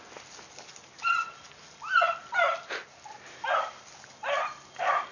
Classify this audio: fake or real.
real